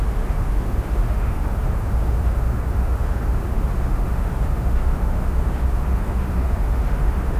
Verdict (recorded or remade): remade